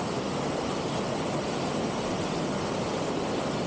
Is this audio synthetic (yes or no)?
no